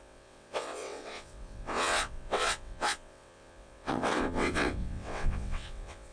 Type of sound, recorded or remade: remade